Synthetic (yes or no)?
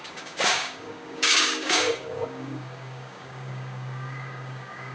yes